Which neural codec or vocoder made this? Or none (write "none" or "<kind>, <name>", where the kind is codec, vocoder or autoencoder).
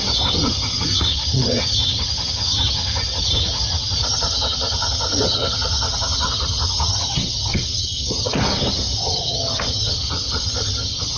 vocoder, HiFi-GAN